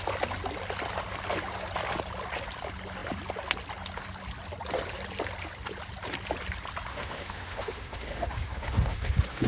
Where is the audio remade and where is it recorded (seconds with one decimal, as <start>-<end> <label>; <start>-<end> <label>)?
0.0-6.9 recorded; 6.9-9.5 remade